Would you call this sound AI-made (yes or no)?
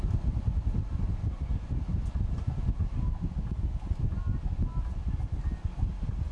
no